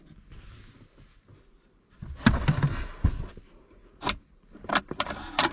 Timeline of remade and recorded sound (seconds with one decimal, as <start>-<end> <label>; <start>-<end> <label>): 0.0-3.9 recorded; 3.9-4.8 remade; 4.8-5.5 recorded